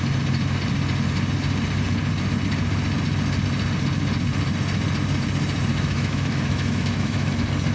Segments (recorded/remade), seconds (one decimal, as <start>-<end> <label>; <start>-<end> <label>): 0.0-5.7 recorded; 5.7-7.3 remade; 7.3-7.7 recorded